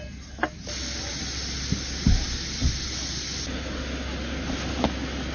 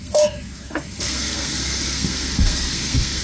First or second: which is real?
first